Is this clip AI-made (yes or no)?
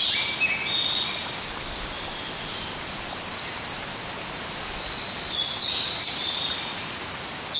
no